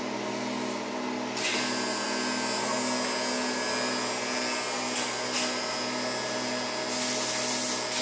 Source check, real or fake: real